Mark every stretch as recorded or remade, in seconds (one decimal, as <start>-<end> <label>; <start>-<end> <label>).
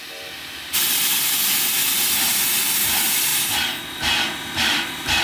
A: 0.0-5.2 recorded